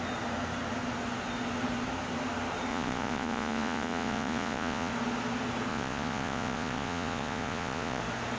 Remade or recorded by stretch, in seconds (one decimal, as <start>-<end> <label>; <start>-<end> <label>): 0.0-2.7 recorded; 2.7-4.9 remade; 4.9-5.7 recorded; 5.7-8.0 remade; 8.0-8.4 recorded